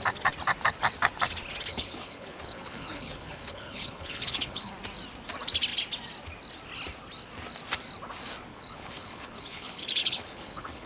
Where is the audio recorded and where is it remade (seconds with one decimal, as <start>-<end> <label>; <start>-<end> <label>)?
0.0-1.7 recorded; 1.7-4.7 remade; 4.7-8.5 recorded; 8.5-10.9 remade